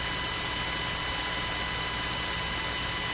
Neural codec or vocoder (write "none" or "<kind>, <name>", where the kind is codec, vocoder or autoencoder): none